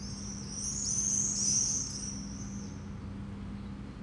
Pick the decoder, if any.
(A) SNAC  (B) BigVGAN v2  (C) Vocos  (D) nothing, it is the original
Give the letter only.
D